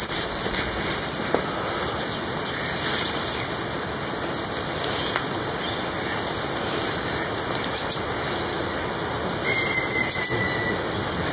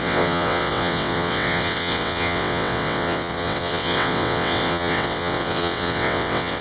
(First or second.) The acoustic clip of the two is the first